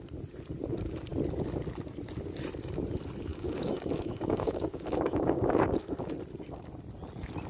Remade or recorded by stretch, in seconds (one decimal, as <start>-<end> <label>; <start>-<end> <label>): 0.0-3.3 recorded; 3.3-6.1 remade; 6.1-7.5 recorded